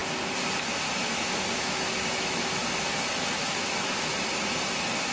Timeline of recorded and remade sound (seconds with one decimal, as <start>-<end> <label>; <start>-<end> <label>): 0.0-1.0 recorded; 1.0-4.1 remade; 4.1-5.1 recorded